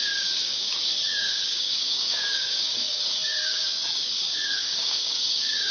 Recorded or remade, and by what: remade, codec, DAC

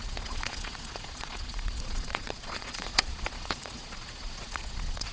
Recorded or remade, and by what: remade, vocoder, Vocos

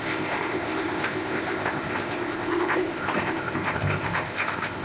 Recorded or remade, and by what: remade, codec, ZipCodec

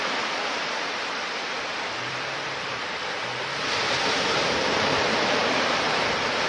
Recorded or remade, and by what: remade, vocoder, BigVGAN v2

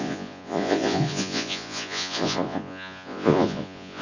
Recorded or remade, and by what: remade, vocoder, Vocos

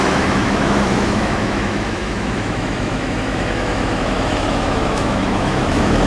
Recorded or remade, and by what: remade, autoencoder, DAC-VAE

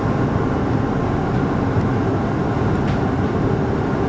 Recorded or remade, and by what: recorded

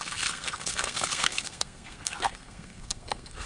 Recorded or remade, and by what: remade, codec, SNAC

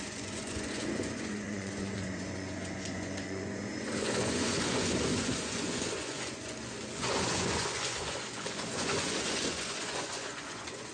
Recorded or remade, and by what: remade, vocoder, Vocos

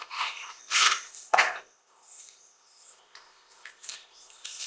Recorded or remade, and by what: remade, codec, ZipCodec